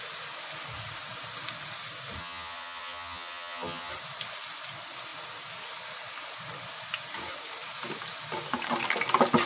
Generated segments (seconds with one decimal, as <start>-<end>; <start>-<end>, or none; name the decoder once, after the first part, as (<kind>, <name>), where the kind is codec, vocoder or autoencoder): 2.2-3.9 (vocoder, HiFi-GAN)